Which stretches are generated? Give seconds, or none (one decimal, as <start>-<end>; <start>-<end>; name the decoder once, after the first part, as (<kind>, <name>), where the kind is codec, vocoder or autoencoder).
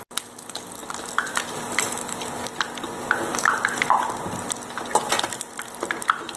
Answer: none